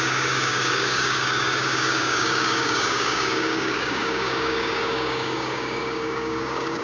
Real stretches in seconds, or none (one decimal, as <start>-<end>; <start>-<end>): none